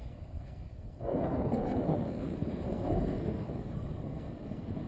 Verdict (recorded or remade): remade